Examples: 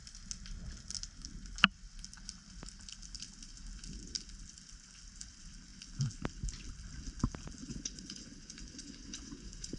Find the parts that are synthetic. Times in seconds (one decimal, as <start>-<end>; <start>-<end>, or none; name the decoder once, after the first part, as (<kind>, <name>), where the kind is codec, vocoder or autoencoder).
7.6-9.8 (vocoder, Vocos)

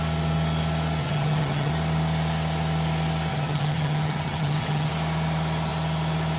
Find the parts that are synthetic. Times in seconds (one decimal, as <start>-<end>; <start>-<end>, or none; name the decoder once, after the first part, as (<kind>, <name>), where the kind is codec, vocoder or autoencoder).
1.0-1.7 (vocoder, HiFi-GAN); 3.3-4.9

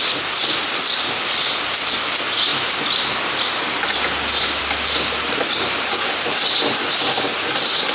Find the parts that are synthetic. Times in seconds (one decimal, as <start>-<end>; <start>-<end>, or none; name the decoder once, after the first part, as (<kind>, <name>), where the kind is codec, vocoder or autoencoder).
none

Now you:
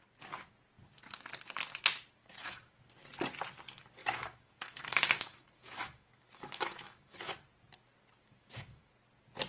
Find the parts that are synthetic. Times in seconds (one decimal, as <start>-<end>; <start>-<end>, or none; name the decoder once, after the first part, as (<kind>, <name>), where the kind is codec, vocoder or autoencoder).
2.2-2.8 (autoencoder, DAC-VAE); 4.0-7.3; 8.2-8.9